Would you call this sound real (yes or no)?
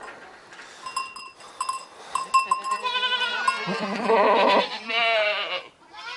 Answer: yes